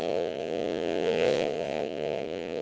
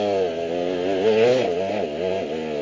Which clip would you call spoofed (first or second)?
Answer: first